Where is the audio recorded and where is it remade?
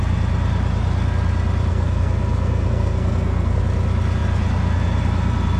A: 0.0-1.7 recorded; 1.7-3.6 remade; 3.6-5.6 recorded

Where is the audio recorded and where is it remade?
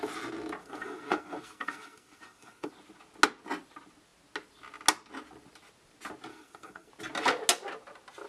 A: 0.0-0.6 recorded; 0.6-2.7 remade; 2.7-6.3 recorded; 6.3-6.9 remade; 6.9-8.3 recorded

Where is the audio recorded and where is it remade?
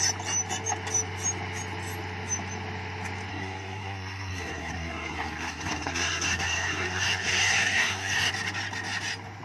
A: 0.0-3.3 recorded; 3.3-8.3 remade; 8.3-9.4 recorded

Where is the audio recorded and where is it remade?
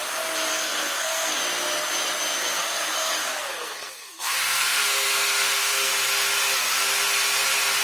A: 0.0-0.5 recorded; 0.5-1.4 remade; 1.4-2.4 recorded; 2.4-5.9 remade; 5.9-7.8 recorded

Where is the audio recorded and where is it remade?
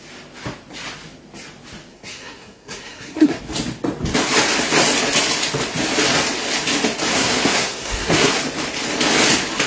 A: 0.0-1.9 recorded; 1.9-3.4 remade; 3.4-7.1 recorded; 7.1-8.4 remade; 8.4-9.7 recorded